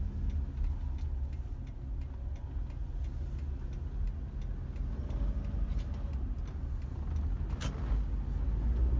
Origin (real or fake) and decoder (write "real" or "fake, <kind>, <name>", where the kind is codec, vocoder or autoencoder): real